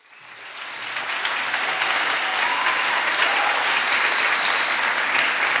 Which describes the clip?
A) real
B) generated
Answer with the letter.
A